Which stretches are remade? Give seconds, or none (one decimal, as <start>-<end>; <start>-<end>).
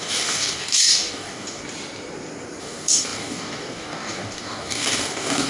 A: 0.0-1.6; 2.6-5.5